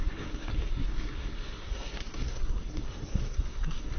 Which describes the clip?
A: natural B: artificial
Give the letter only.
B